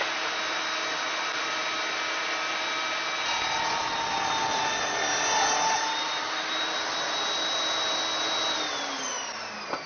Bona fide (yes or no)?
yes